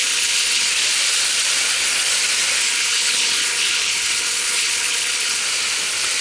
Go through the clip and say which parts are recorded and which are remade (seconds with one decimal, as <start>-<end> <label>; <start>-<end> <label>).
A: 0.0-0.7 remade; 0.7-2.6 recorded; 2.6-5.4 remade; 5.4-6.2 recorded